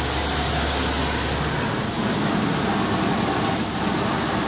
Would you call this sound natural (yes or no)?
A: yes